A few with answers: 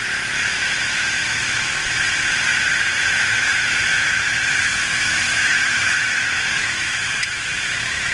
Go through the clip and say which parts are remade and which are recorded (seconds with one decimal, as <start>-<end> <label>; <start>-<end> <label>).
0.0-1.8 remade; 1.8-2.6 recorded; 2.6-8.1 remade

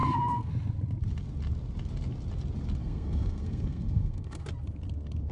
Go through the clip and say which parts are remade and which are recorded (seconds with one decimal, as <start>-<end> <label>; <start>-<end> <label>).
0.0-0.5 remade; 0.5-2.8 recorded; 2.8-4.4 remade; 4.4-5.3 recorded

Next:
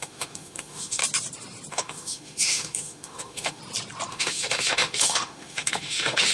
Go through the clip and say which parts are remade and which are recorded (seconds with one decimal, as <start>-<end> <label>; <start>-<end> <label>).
0.0-1.0 remade; 1.0-1.7 recorded; 1.7-3.6 remade; 3.6-4.1 recorded; 4.1-6.3 remade

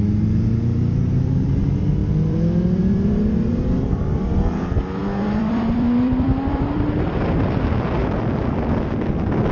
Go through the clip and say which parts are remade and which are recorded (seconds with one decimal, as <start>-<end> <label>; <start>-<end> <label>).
0.0-2.0 recorded; 2.0-4.6 remade; 4.6-5.0 recorded; 5.0-7.1 remade; 7.1-8.0 recorded; 8.0-9.1 remade; 9.1-9.5 recorded

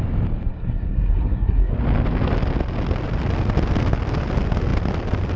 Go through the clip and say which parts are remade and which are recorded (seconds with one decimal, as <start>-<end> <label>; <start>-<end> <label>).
0.0-0.5 recorded; 0.5-1.7 remade; 1.7-5.4 recorded

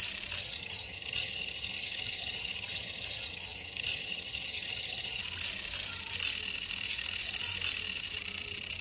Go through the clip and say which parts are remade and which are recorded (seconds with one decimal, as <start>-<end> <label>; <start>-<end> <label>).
0.0-0.4 recorded; 0.4-5.2 remade; 5.2-8.8 recorded

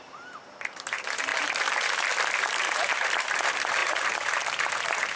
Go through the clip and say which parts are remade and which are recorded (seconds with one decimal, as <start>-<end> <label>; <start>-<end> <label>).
0.0-1.3 remade; 1.3-2.4 recorded; 2.4-5.2 remade

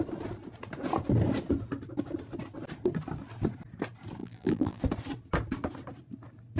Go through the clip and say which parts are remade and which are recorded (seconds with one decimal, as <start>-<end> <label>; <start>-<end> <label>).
0.0-4.2 recorded; 4.2-4.8 remade; 4.8-6.6 recorded